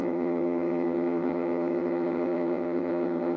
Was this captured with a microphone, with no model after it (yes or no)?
no